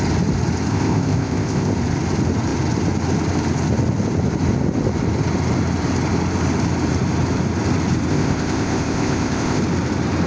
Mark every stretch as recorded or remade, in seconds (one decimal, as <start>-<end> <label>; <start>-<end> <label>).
0.0-0.7 recorded; 0.7-1.7 remade; 1.7-8.1 recorded; 8.1-9.6 remade; 9.6-10.3 recorded